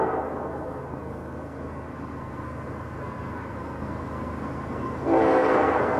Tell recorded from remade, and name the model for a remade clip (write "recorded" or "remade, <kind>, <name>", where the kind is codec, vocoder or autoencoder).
remade, codec, SNAC